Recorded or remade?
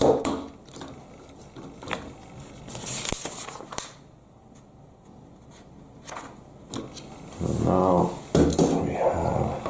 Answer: recorded